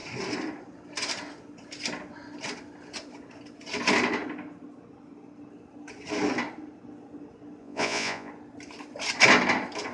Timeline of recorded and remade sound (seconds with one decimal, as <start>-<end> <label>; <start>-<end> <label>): 0.0-7.6 recorded; 7.6-8.3 remade; 8.3-9.9 recorded